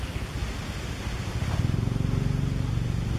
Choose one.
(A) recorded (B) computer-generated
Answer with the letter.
A